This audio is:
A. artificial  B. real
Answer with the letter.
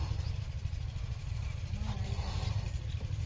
B